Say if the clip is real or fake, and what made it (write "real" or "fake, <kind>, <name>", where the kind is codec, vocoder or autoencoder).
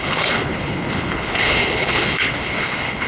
fake, codec, HILCodec